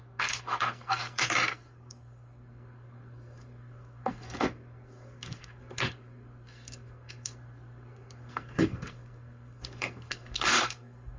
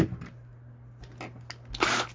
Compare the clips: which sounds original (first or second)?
second